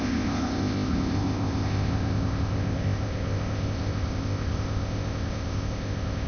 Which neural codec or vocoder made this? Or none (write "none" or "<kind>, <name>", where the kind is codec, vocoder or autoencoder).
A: codec, ZipCodec